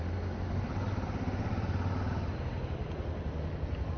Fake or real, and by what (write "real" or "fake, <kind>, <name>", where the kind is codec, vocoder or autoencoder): real